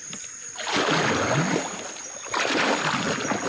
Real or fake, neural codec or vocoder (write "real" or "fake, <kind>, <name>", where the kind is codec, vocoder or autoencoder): real